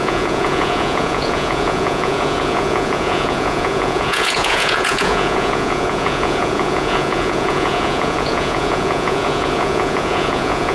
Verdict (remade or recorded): remade